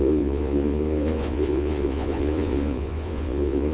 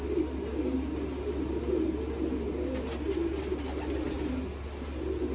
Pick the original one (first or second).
second